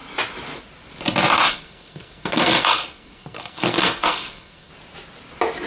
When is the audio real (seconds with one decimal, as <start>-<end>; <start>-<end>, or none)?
0.0-1.5; 4.7-5.7

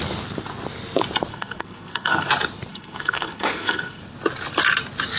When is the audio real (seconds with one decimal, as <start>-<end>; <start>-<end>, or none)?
0.0-1.3; 2.3-2.7; 4.0-5.2

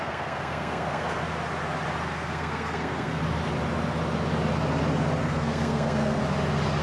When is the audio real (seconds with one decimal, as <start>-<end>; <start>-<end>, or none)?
1.3-2.0; 3.2-5.2; 6.2-6.8

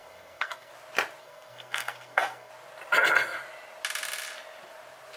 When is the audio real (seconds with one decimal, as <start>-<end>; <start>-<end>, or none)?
0.7-1.2; 2.5-5.2